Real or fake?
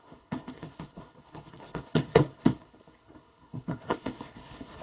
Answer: fake